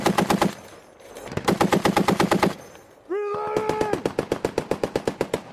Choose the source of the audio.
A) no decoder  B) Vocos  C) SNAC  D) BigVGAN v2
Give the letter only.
A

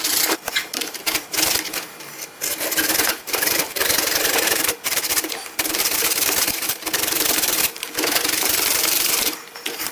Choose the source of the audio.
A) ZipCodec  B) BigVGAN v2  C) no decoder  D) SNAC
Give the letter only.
B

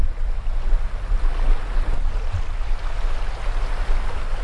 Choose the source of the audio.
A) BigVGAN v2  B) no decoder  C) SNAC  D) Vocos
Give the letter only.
B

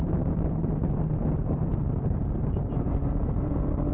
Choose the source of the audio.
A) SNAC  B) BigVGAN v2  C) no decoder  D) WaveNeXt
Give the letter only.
B